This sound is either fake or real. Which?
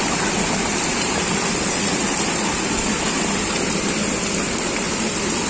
fake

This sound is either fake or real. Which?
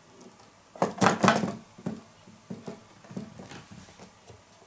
real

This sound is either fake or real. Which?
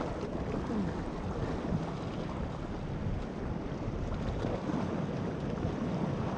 real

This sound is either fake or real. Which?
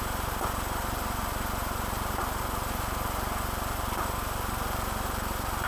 fake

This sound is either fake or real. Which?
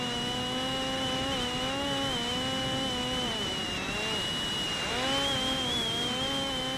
real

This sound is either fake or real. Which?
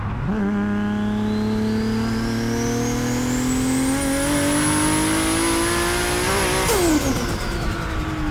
real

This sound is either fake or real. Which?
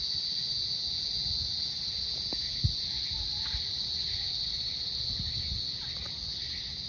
real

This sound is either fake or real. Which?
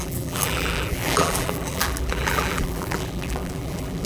fake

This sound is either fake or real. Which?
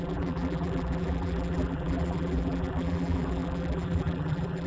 fake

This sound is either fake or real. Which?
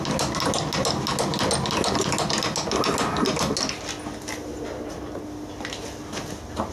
real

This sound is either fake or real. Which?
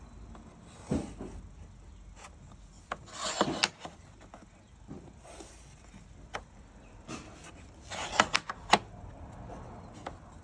real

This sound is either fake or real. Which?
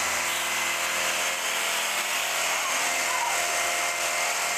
real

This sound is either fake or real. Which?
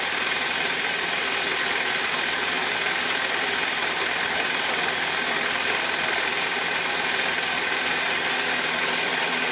fake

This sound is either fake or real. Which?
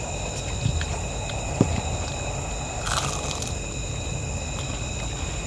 real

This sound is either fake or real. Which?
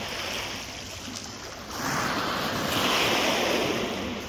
real